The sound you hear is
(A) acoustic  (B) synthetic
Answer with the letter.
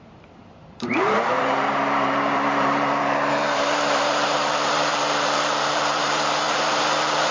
B